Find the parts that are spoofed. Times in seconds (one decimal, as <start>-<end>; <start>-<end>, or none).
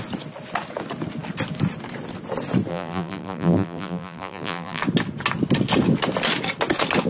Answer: 2.7-4.8